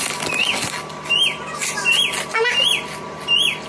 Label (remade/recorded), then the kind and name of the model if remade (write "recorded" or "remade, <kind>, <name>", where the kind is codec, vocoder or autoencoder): recorded